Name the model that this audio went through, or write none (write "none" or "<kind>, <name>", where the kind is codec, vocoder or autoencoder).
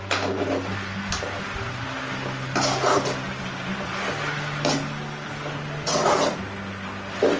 none